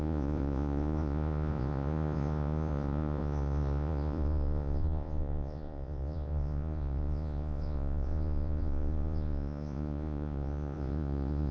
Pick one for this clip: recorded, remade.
remade